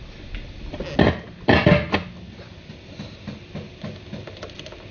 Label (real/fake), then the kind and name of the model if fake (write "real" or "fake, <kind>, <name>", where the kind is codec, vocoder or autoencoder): real